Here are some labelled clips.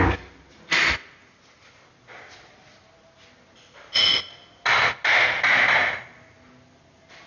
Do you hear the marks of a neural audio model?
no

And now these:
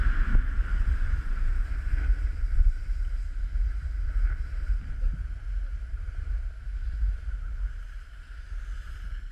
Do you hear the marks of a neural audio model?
no